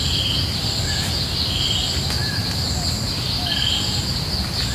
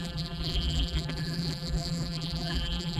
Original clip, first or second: first